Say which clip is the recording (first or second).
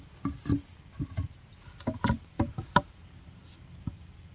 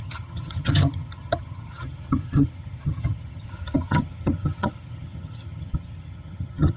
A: first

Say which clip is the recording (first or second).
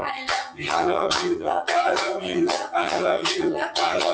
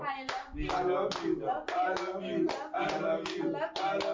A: second